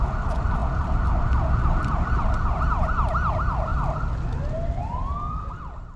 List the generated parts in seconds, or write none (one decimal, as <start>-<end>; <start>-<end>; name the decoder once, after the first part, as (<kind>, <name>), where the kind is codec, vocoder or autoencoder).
none